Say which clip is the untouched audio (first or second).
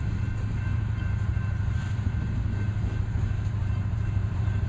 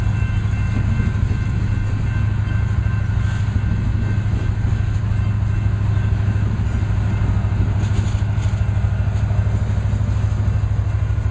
second